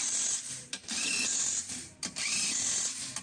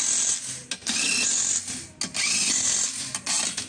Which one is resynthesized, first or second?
first